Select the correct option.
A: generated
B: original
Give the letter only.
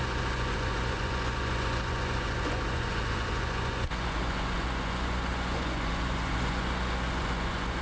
A